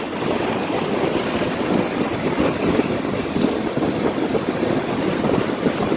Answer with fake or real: real